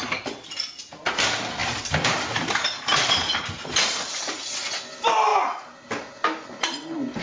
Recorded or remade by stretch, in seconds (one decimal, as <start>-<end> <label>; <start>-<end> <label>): 0.0-1.6 recorded; 1.6-4.6 remade; 4.6-5.3 recorded; 5.3-5.9 remade; 5.9-7.2 recorded